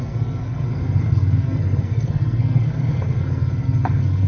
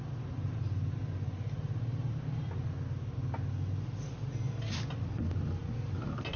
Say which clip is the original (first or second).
second